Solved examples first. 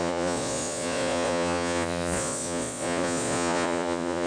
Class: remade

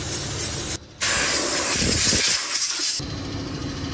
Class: recorded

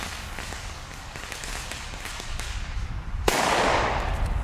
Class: remade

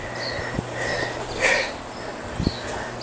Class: recorded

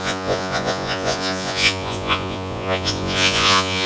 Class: remade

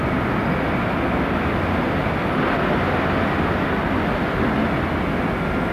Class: recorded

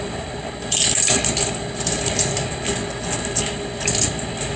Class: recorded